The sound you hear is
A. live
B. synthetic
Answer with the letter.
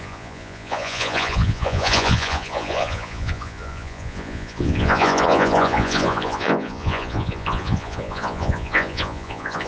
B